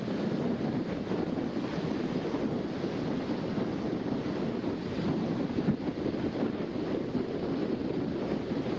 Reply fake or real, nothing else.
real